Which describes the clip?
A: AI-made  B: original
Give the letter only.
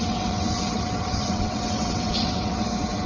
A